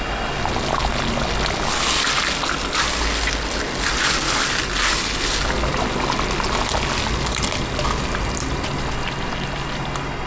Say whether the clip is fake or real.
real